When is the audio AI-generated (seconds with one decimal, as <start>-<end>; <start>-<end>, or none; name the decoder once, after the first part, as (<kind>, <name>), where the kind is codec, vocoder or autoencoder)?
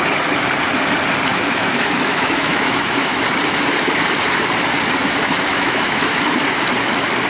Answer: 1.3-3.2 (autoencoder, DAC-VAE); 5.5-6.3